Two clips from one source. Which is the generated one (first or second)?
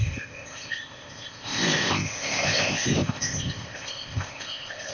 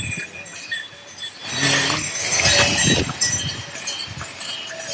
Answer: first